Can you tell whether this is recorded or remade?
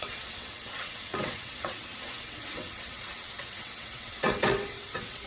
remade